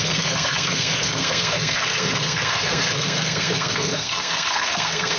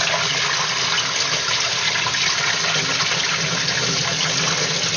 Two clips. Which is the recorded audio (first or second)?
second